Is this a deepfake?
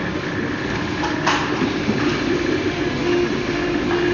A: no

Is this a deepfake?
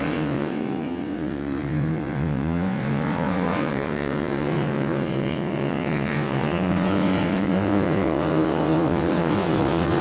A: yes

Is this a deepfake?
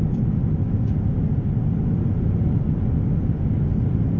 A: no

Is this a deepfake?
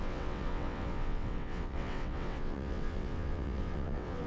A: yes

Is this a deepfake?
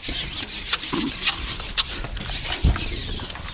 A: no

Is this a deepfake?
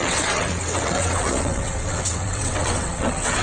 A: yes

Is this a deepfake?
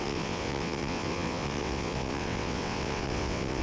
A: yes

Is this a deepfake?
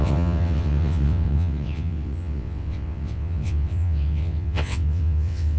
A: yes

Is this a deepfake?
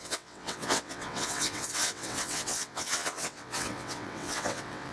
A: yes